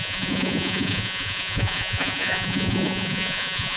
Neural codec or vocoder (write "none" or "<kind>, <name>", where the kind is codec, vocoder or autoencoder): vocoder, Vocos